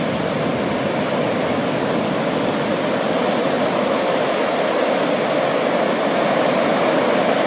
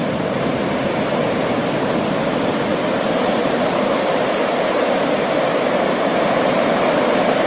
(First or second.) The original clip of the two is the first